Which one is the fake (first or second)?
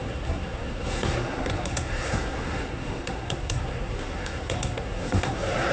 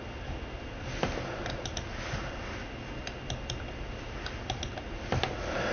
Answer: first